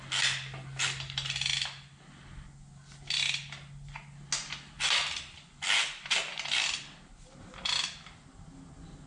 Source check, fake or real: real